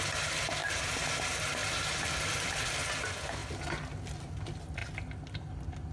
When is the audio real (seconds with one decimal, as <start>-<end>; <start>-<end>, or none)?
0.0-1.6; 2.9-5.9